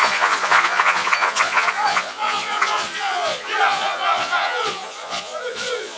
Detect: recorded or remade remade